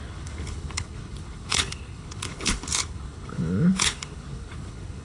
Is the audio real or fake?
fake